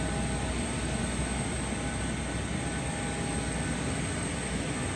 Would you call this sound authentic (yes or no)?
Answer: yes